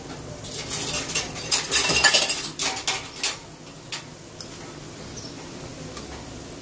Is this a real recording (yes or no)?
yes